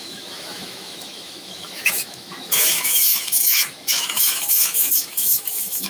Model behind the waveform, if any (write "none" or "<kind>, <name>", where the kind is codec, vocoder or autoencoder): autoencoder, DAC-VAE